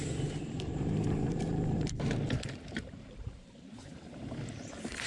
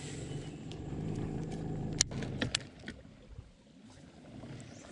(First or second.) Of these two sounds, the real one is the second